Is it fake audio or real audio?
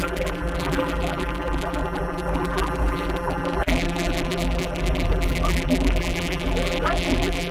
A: fake